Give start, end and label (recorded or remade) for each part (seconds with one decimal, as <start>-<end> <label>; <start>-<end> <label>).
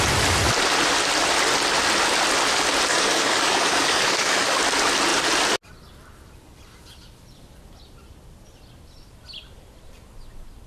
0.0-2.9 recorded; 2.9-4.6 remade; 4.6-10.7 recorded